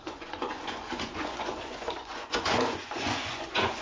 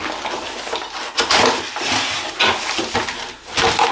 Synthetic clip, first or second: first